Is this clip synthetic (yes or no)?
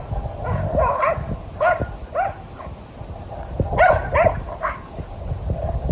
no